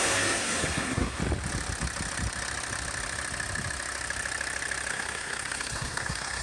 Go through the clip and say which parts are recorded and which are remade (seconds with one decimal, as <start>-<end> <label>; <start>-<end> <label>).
0.0-1.2 remade; 1.2-4.9 recorded; 4.9-6.4 remade